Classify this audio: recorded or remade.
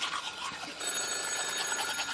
remade